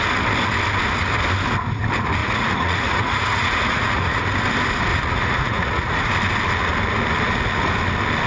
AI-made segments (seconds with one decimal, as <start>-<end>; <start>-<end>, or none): 2.2-4.2; 4.9-6.1